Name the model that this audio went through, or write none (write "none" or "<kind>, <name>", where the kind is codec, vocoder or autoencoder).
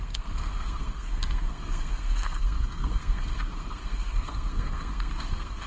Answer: codec, SNAC